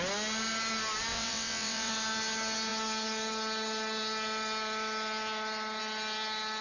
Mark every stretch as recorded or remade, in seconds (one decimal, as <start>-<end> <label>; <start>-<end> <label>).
0.0-1.1 recorded; 1.1-1.9 remade; 1.9-6.6 recorded